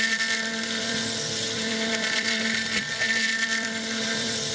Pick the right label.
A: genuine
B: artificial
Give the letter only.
B